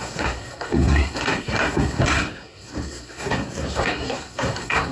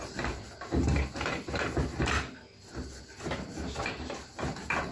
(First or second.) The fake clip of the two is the first